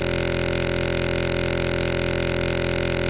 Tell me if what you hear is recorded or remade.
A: remade